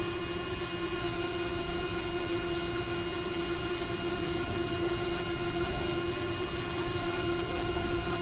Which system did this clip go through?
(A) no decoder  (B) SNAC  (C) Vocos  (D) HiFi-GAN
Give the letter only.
D